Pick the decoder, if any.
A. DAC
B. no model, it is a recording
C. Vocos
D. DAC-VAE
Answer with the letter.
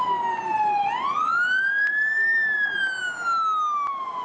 B